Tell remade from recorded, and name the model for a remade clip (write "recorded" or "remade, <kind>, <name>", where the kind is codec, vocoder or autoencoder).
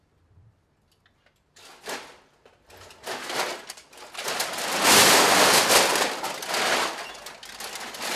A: recorded